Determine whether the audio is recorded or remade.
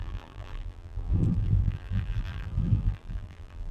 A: remade